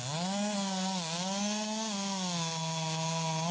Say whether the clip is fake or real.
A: real